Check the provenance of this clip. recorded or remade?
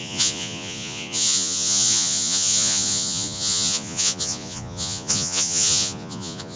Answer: remade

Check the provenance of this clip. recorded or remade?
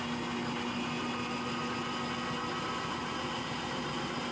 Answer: recorded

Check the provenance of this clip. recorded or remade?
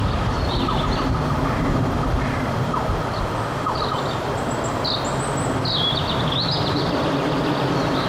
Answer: recorded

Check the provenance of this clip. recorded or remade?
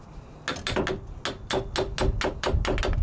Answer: recorded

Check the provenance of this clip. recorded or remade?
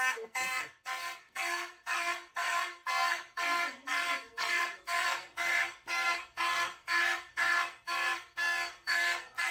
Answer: remade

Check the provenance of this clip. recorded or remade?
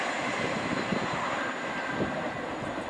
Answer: recorded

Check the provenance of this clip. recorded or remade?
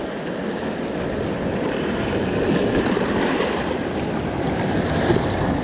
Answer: recorded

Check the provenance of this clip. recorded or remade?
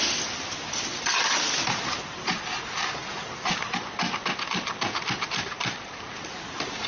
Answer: recorded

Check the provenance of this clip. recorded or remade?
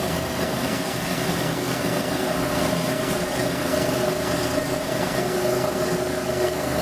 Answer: remade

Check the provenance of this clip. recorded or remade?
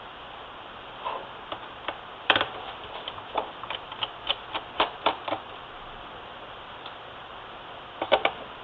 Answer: remade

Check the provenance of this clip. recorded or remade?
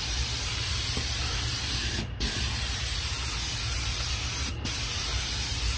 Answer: recorded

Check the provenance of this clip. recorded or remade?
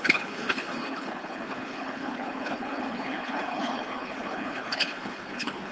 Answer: remade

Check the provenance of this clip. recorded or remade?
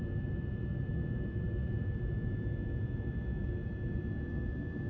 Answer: recorded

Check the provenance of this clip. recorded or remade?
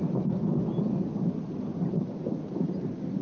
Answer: recorded